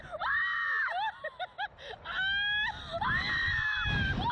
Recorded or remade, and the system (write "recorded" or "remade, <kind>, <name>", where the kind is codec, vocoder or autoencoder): recorded